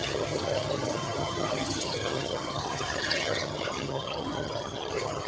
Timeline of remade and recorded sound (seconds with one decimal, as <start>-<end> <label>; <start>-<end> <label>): 0.0-5.3 remade